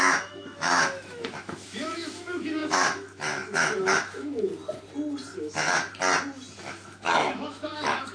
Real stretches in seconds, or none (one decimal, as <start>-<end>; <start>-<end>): 4.5-5.4; 6.0-6.6